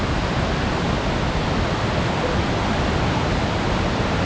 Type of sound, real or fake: real